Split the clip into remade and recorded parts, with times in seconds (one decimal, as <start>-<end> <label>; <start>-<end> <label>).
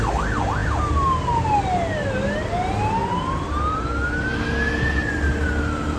0.0-3.0 recorded; 3.0-3.8 remade; 3.8-6.0 recorded